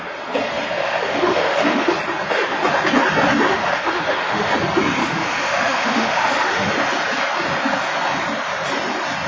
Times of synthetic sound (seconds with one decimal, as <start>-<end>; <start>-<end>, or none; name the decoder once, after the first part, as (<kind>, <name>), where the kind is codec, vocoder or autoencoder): 0.8-1.9 (autoencoder, DAC-VAE); 3.5-4.5; 5.0-6.7